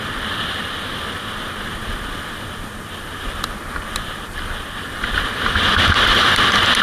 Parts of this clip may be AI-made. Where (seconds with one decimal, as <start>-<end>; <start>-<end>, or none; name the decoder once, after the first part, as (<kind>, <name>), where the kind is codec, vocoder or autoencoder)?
none